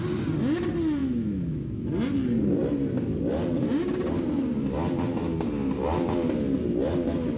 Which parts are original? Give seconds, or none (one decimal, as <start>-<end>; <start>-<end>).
0.0-1.0; 1.9-7.4